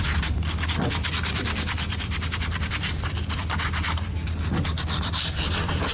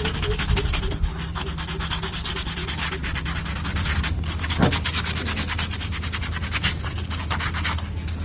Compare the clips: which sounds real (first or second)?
second